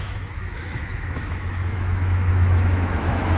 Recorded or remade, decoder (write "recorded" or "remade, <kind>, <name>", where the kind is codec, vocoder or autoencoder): remade, autoencoder, DAC-VAE